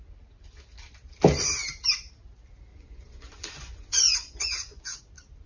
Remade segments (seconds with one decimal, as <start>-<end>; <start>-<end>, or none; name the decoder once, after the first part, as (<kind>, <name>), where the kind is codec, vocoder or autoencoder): 2.7-5.0 (vocoder, Vocos)